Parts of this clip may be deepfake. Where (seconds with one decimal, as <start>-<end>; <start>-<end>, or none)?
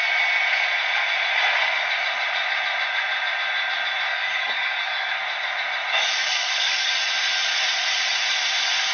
4.1-5.1; 6.2-6.9